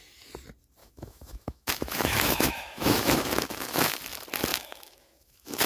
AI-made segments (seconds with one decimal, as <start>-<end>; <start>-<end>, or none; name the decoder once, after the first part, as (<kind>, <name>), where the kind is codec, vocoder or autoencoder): 0.8-4.0 (autoencoder, DAC-VAE); 4.5-5.7